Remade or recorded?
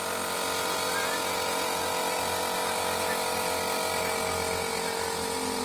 recorded